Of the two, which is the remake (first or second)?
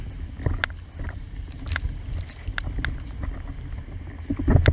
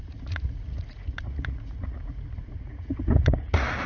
second